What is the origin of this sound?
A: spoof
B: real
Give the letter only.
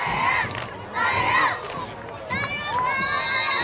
B